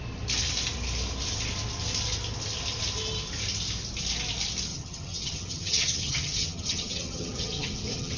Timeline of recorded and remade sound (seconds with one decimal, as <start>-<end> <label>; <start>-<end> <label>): 0.0-4.7 recorded; 4.7-8.2 remade